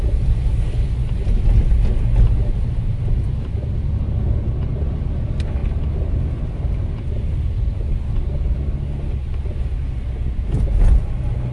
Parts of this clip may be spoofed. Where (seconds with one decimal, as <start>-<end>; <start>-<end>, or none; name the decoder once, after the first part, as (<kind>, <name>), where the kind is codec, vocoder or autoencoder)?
none